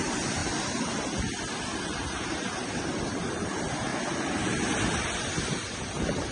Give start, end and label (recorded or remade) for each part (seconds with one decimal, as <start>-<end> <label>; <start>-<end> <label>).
0.0-0.4 remade; 0.4-1.8 recorded; 1.8-3.9 remade; 3.9-5.5 recorded; 5.5-6.3 remade